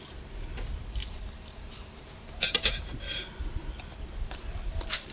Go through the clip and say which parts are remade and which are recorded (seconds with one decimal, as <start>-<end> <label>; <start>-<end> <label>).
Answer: 0.0-1.0 recorded; 1.0-2.7 remade; 2.7-5.1 recorded